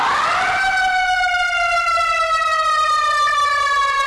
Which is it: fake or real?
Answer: real